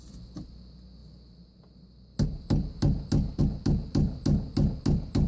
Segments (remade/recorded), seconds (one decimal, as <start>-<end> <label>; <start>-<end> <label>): 0.0-5.3 recorded